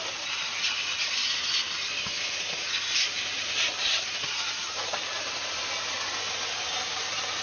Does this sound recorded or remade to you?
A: remade